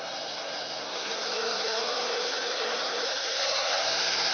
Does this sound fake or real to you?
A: fake